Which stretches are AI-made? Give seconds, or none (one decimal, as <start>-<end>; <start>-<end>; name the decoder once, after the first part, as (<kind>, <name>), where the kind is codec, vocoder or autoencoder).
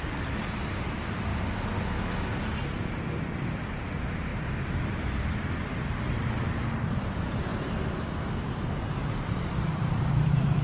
0.0-1.3 (vocoder, BigVGAN v2); 3.5-10.6